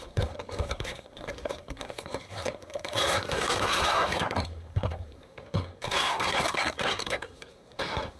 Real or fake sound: fake